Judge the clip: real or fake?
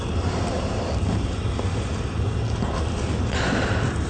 real